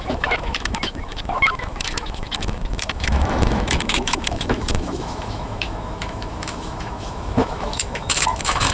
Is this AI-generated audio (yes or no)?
yes